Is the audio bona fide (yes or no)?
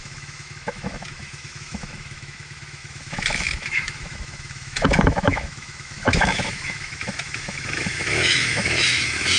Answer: no